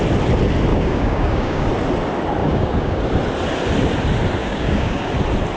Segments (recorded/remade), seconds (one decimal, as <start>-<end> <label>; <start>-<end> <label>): 0.0-0.7 recorded; 0.7-1.7 remade; 1.7-2.4 recorded; 2.4-3.0 remade; 3.0-4.4 recorded; 4.4-5.1 remade; 5.1-5.6 recorded